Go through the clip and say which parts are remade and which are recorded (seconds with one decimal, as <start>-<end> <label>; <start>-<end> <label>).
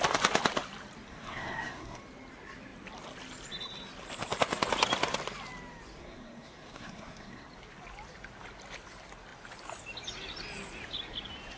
0.0-1.1 recorded; 1.1-2.0 remade; 2.0-6.0 recorded; 6.0-7.5 remade; 7.5-11.6 recorded